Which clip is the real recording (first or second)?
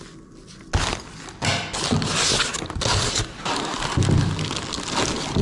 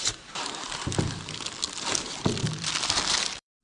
first